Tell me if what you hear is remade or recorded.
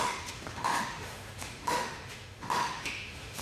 remade